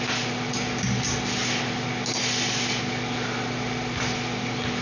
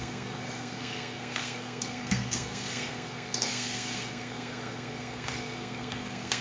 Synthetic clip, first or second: second